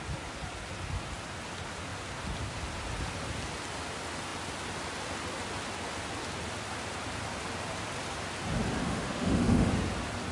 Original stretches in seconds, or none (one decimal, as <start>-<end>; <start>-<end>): 0.0-8.8; 9.7-10.3